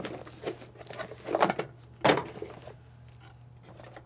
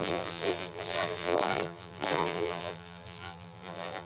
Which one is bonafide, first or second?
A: first